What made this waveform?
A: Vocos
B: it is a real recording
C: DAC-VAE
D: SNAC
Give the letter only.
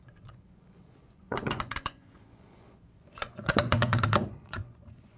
A